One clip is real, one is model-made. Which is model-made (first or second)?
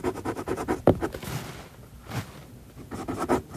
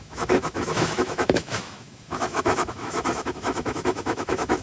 second